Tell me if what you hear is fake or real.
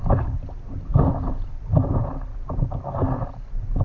real